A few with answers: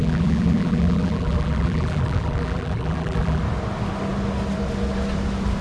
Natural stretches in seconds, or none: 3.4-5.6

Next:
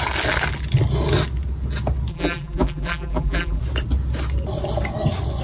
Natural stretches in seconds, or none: 0.0-2.1; 3.6-5.4

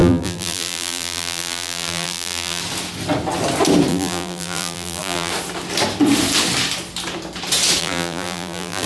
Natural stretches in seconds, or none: 2.6-3.9; 5.3-7.8

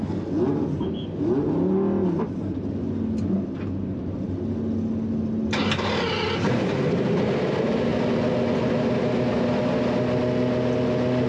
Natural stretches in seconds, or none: 0.0-11.3

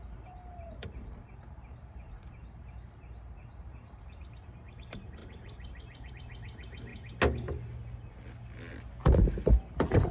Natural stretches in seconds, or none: 6.9-9.5

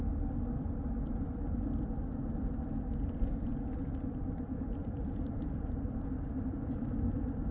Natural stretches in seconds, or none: 3.5-4.1

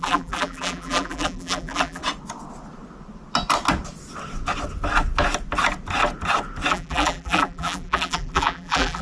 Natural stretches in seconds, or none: 2.0-6.7